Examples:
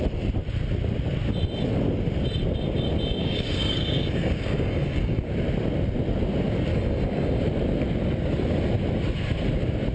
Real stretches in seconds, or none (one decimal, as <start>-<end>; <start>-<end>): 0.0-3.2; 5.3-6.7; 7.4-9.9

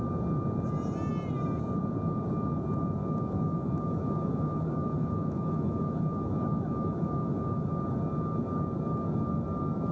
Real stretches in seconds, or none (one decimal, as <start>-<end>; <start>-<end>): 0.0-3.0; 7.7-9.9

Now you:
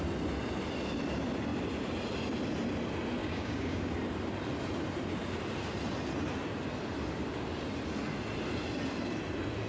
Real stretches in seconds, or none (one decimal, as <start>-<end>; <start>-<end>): 0.0-3.2; 3.9-9.7

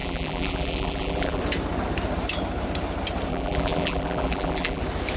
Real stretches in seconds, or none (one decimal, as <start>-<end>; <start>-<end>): 1.4-3.3; 4.8-5.2

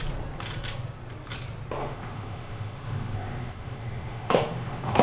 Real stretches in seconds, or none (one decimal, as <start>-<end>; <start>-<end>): 0.0-1.8

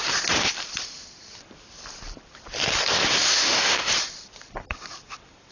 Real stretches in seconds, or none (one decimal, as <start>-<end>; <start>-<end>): 0.0-3.3; 3.9-5.5

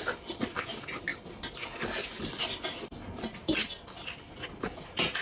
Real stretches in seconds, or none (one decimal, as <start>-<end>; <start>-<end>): 0.0-5.2

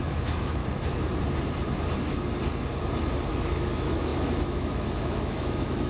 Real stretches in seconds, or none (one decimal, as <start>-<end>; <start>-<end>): 0.6-3.3